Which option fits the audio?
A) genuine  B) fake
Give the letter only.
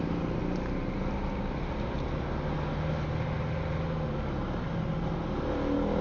A